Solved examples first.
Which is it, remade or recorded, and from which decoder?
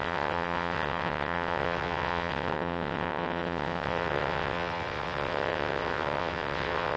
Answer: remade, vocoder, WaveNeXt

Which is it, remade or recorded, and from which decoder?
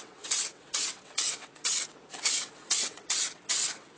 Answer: remade, vocoder, WaveNeXt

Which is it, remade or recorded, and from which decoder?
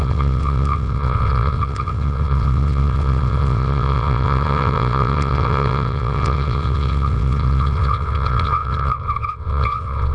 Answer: remade, vocoder, WaveNeXt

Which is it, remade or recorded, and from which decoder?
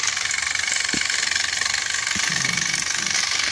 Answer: recorded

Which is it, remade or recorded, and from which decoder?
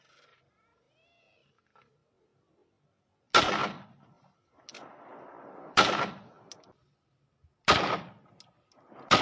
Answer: recorded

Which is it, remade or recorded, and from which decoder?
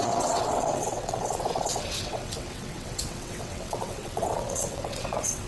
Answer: remade, vocoder, WaveNeXt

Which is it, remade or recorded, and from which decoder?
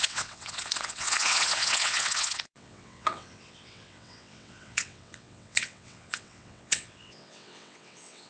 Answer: remade, vocoder, WaveNeXt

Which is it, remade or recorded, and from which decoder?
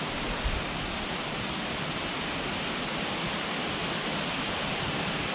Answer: recorded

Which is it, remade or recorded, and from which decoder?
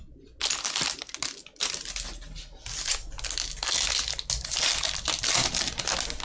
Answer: recorded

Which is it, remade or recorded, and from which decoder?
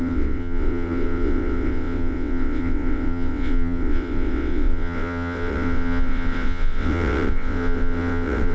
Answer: remade, vocoder, WaveNeXt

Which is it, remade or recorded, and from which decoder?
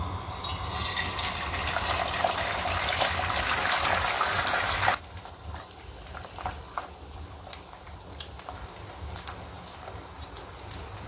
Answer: recorded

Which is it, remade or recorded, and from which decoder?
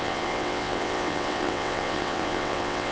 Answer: remade, vocoder, WaveNeXt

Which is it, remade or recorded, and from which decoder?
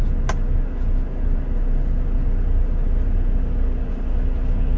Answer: recorded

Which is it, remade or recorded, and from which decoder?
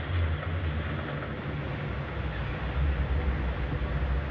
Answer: recorded